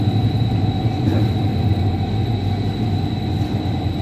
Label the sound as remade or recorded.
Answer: recorded